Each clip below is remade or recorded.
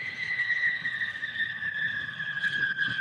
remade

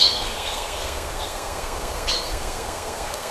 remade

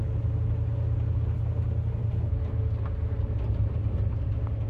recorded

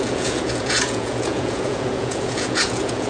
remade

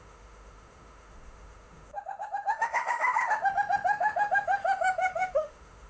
remade